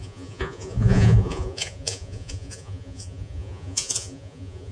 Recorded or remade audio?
remade